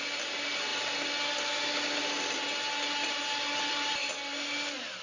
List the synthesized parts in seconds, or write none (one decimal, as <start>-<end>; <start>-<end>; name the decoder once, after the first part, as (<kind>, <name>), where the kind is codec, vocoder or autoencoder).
none